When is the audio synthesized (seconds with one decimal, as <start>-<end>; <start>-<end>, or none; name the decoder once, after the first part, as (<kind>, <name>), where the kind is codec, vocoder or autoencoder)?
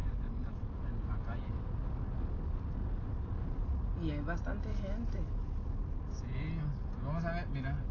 none